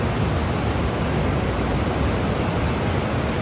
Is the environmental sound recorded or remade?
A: recorded